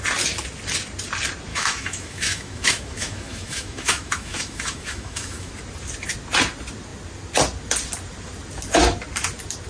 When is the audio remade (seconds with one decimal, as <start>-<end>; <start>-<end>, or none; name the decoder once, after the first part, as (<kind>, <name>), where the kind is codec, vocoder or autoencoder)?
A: 1.5-5.5 (autoencoder, DAC-VAE)